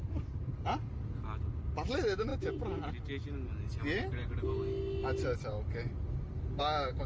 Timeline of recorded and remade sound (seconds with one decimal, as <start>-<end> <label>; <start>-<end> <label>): 0.0-7.1 recorded